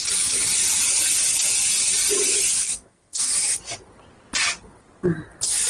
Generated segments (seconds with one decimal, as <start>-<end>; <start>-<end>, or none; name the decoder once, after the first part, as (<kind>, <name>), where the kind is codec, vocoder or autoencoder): 2.6-3.3 (codec, SNAC)